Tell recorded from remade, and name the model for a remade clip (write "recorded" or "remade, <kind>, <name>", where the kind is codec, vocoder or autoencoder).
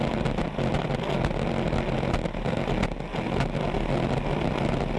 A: recorded